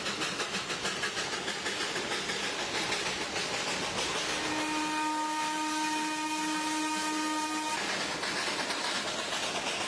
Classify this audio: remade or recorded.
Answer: recorded